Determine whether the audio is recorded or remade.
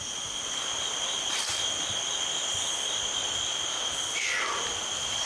recorded